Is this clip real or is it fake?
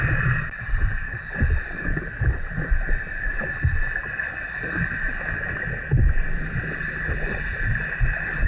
real